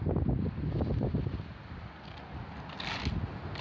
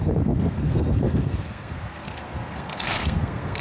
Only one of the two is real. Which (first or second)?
first